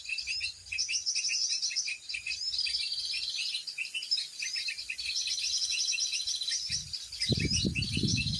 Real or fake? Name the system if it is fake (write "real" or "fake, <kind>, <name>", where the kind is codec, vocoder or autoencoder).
real